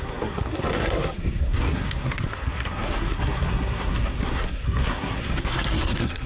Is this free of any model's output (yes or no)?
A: no